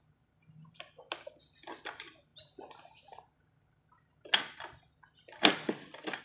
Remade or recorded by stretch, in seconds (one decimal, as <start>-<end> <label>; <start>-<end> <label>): 0.0-6.2 recorded